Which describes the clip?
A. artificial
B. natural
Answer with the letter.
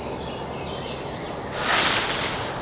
B